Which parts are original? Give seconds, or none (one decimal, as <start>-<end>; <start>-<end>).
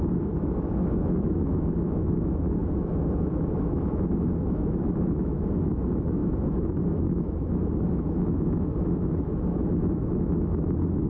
none